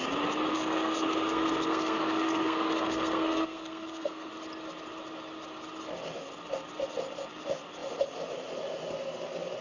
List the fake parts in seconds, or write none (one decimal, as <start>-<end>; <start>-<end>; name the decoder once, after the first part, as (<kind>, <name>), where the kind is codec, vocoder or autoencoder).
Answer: 0.5-4.3 (codec, SNAC)